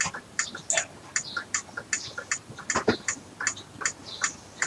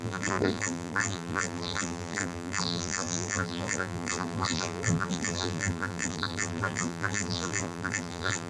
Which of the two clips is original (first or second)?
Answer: first